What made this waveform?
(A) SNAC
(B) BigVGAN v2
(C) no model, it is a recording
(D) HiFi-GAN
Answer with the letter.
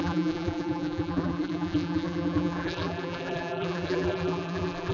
B